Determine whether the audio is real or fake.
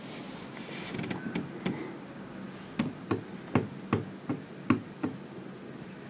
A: real